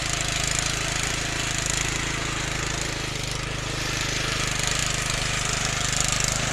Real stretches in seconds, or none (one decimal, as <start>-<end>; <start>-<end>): 0.0-6.5